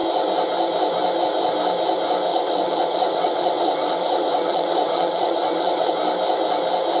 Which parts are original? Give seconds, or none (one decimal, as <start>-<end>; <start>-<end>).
0.0-2.3; 5.9-7.0